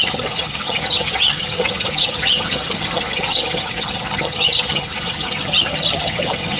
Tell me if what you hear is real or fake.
fake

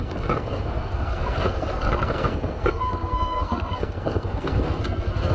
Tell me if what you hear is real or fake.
fake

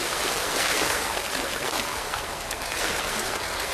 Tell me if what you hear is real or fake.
fake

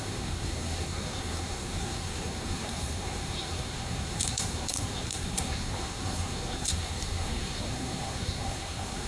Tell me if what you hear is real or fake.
fake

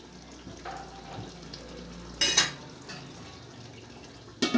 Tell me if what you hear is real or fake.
real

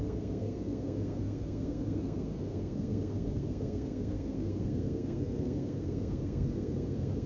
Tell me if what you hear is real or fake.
fake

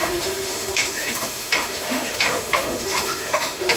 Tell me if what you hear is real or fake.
fake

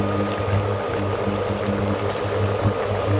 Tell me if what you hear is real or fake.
real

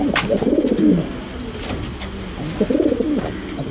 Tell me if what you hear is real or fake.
real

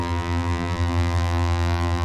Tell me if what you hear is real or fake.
fake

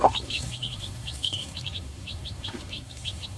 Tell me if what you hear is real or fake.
fake